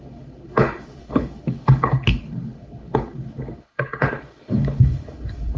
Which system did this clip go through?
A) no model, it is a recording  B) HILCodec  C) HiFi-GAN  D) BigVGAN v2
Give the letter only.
B